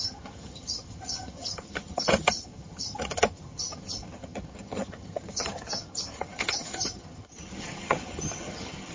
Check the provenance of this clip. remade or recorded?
remade